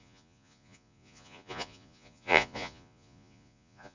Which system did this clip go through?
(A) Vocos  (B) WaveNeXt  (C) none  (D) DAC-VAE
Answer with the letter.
A